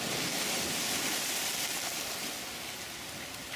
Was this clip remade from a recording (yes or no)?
no